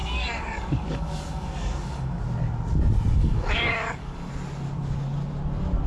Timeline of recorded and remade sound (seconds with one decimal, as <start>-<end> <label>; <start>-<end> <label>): 0.0-2.2 remade; 2.2-3.2 recorded; 3.2-4.3 remade; 4.3-5.9 recorded